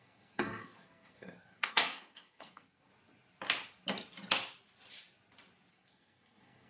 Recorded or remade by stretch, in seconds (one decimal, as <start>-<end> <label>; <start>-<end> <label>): 0.0-2.9 remade; 2.9-5.7 recorded; 5.7-6.7 remade